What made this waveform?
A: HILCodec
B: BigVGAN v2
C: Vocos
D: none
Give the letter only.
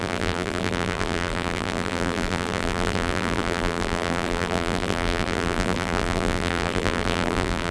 B